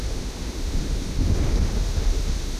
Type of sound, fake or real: fake